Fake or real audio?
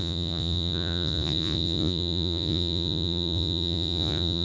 fake